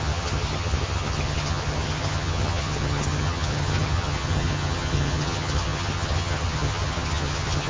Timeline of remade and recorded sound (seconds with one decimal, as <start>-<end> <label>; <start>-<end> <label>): 0.0-7.7 remade